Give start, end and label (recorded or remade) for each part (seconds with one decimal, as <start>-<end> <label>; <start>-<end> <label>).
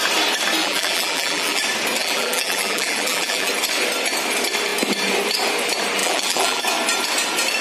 0.0-0.6 recorded; 0.6-1.6 remade; 1.6-2.0 recorded; 2.0-3.5 remade; 3.5-6.0 recorded; 6.0-6.6 remade; 6.6-7.6 recorded